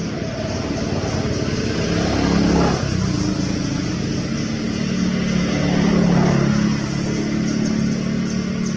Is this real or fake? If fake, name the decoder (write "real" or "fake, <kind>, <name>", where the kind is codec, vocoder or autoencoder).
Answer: real